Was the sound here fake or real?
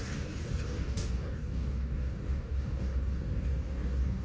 fake